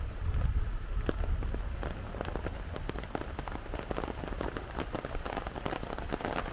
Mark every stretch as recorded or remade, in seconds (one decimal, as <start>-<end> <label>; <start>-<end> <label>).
0.0-6.5 remade